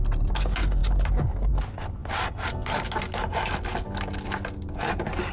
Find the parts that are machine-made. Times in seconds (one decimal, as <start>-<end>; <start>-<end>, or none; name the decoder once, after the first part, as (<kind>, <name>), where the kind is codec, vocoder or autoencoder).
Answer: none